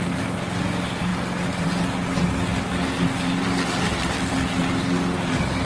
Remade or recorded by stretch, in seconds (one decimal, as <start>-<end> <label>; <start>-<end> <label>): 0.0-5.7 recorded